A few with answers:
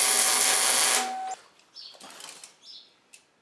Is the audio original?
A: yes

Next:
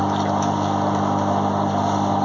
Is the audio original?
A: yes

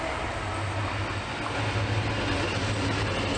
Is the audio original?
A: yes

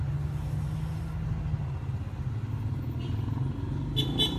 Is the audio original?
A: yes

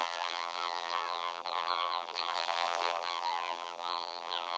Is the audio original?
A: no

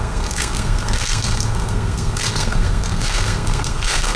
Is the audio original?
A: no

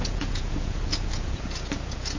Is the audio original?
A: no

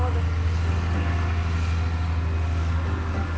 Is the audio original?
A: yes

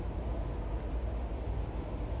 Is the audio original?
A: yes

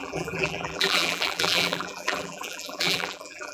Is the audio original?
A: no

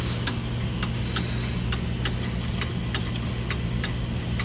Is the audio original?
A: yes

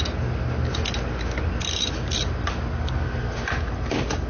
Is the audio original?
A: yes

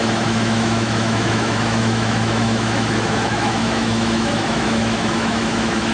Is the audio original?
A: no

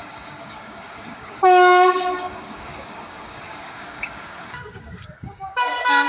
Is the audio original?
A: no